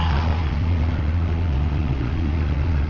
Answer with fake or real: fake